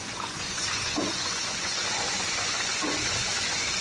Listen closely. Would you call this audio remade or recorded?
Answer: remade